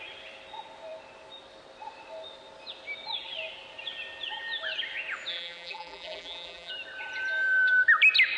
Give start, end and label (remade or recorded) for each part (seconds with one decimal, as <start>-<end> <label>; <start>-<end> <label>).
0.0-5.3 recorded; 5.3-6.7 remade; 6.7-8.4 recorded